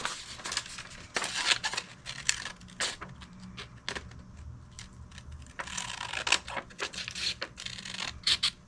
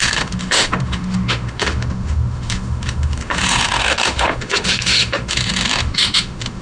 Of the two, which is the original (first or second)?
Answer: first